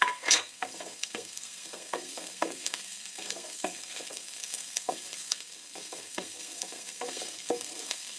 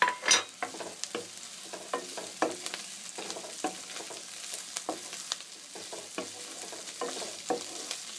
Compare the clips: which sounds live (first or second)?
second